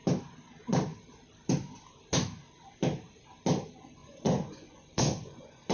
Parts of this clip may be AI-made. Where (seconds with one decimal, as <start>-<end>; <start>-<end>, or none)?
4.0-5.7